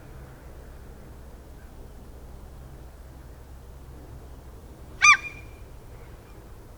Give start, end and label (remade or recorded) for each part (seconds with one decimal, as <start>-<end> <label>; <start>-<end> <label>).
0.0-4.6 recorded; 4.6-5.6 remade; 5.6-6.8 recorded